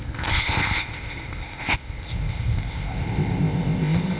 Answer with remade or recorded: remade